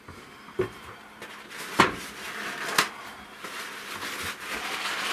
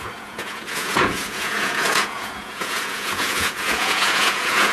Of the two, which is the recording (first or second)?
first